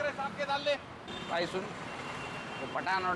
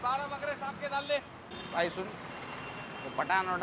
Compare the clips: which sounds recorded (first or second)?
second